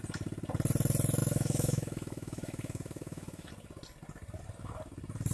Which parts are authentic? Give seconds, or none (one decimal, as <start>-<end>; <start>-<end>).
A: 0.0-1.2; 3.5-5.3